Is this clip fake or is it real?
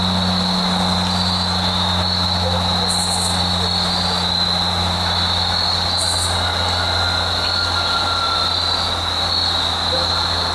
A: real